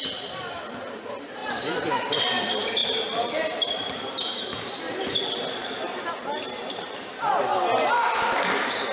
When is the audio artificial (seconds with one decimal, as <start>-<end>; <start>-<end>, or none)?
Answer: 1.4-2.4; 2.8-4.8; 5.6-7.0